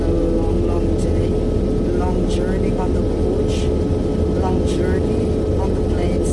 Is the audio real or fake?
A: real